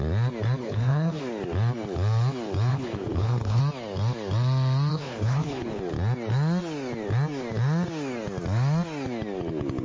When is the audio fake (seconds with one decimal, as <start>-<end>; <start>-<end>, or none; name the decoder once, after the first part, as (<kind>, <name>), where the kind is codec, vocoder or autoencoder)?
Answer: 0.6-1.2 (codec, HILCodec); 2.7-3.6; 4.9-5.8